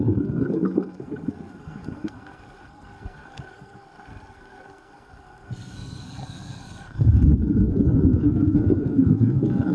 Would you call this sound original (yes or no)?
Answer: no